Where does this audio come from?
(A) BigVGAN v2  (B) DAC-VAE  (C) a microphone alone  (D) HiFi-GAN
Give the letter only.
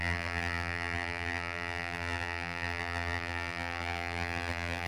A